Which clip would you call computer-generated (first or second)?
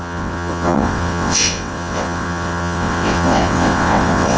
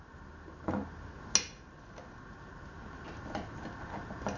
first